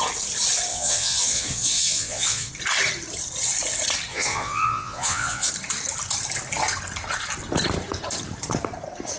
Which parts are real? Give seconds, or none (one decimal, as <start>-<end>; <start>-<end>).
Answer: 0.0-0.7; 2.5-4.1; 5.5-9.2